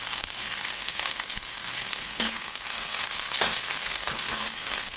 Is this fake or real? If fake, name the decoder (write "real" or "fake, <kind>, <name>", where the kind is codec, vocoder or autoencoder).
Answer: fake, codec, SNAC